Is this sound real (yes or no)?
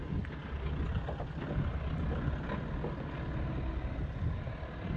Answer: yes